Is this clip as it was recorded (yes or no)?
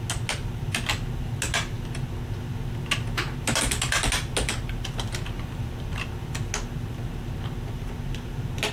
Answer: yes